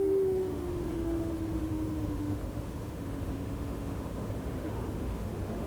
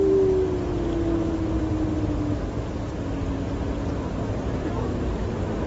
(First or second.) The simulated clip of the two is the first